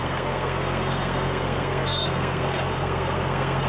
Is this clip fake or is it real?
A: fake